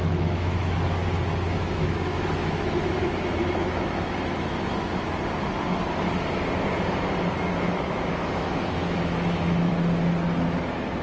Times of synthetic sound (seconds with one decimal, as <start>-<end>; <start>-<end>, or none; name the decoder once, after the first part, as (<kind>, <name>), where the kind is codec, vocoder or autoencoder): 0.0-1.0 (autoencoder, DAC-VAE); 1.5-5.1; 7.5-9.7